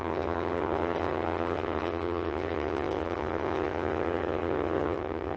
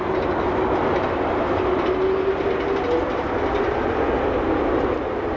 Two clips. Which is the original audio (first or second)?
second